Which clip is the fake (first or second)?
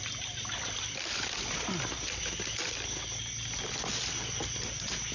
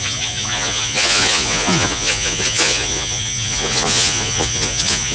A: second